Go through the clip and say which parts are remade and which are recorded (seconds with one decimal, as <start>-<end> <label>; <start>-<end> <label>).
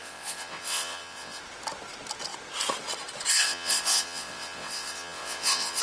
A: 0.0-1.4 remade; 1.4-3.3 recorded; 3.3-5.8 remade